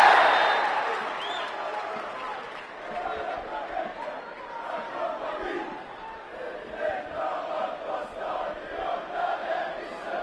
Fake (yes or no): no